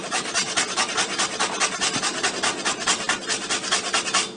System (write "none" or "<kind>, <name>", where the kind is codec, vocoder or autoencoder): none